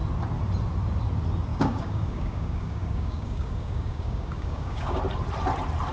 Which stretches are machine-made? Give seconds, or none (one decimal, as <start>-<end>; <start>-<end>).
1.5-5.0

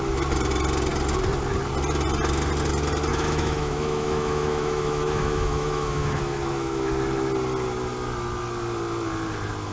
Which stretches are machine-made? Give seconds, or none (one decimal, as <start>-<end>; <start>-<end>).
3.1-6.9

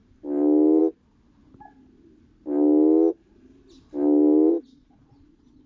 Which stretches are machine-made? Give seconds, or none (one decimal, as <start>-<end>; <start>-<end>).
4.5-5.7

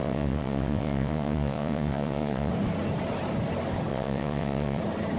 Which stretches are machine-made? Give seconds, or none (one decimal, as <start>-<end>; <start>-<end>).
0.0-2.5; 3.9-4.8

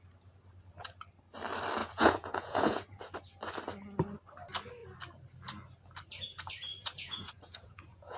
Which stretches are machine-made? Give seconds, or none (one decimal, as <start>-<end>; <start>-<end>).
1.8-3.0; 6.7-8.2